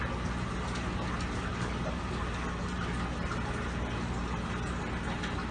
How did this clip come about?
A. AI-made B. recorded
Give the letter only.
B